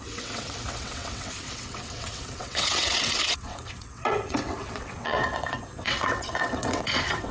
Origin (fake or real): fake